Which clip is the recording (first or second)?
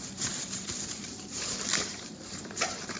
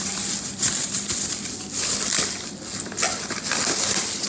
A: second